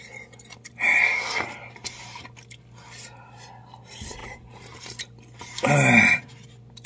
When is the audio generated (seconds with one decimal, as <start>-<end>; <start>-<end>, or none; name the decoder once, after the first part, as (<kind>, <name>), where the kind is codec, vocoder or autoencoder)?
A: none